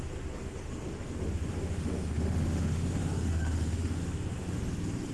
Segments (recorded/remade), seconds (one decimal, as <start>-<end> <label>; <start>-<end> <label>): 0.0-1.5 recorded; 1.5-4.6 remade; 4.6-5.1 recorded